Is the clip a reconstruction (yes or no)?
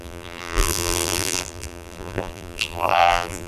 yes